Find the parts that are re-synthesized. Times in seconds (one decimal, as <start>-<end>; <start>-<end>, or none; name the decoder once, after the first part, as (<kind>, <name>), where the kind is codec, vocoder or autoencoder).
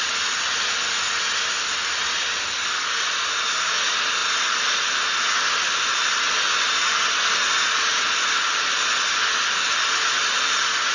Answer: none